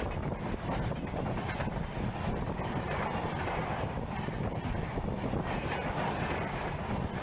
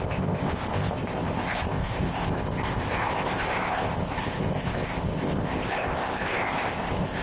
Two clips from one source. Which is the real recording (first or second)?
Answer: first